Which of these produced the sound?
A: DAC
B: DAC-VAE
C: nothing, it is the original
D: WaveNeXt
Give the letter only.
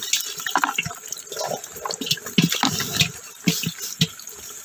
C